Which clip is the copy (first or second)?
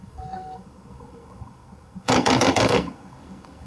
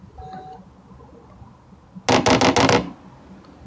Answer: first